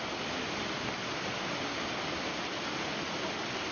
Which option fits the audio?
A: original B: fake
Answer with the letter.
A